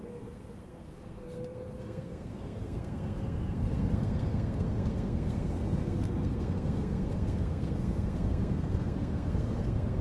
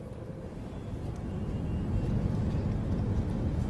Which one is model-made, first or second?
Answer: first